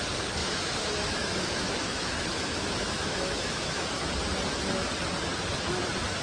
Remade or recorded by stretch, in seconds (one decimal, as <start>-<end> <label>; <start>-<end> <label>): 0.0-0.4 recorded; 0.4-4.1 remade; 4.1-6.2 recorded